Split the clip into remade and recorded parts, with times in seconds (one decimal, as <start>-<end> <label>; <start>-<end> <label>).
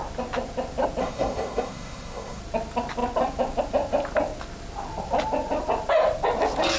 0.0-1.0 recorded; 1.0-2.4 remade; 2.4-6.8 recorded